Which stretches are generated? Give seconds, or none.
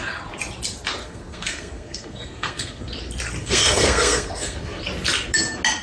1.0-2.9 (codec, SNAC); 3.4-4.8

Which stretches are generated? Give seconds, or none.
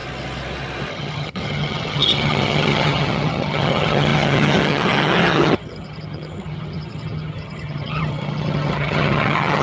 0.9-9.6 (vocoder, HiFi-GAN)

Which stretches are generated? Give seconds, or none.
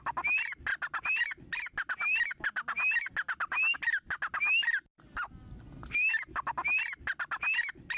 none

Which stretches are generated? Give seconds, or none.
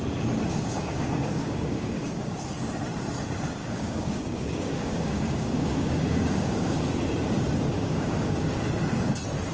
0.5-2.3 (codec, DAC); 3.6-6.9; 7.7-8.6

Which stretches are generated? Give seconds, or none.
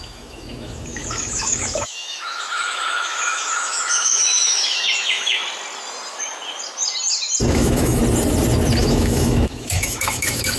0.0-5.4 (autoencoder, DAC-VAE); 7.5-8.0; 8.8-10.6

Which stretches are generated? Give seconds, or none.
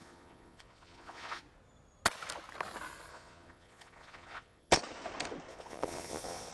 0.0-1.4 (vocoder, Vocos); 3.1-4.7; 5.5-6.5